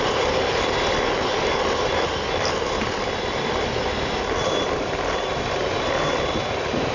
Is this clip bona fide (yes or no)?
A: no